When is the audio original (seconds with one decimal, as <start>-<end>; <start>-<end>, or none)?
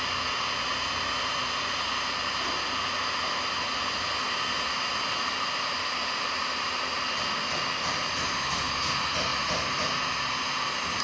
0.0-11.0